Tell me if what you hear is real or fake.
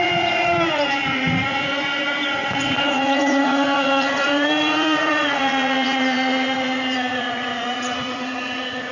fake